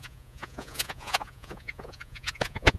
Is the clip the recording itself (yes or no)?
no